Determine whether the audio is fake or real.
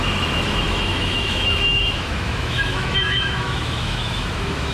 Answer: fake